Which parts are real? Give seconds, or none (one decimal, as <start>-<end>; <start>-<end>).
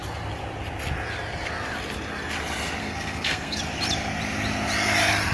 0.0-2.8; 3.6-5.3